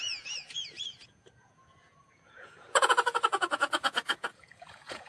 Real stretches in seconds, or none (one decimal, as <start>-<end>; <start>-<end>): none